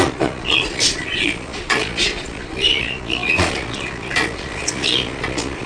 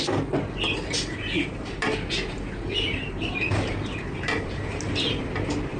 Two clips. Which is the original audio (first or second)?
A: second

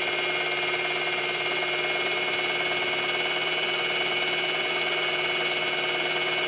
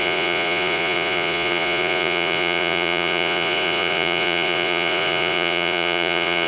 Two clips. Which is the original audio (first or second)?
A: first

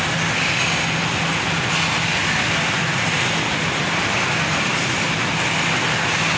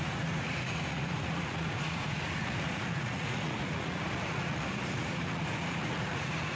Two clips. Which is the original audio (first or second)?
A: first